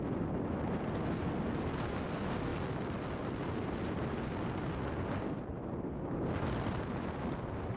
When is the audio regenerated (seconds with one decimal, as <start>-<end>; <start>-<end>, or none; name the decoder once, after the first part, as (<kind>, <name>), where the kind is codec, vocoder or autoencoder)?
none